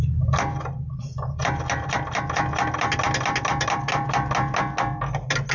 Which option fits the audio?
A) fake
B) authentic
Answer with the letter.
B